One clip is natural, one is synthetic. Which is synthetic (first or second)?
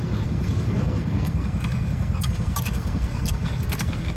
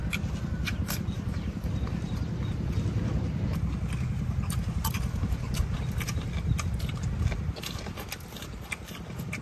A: first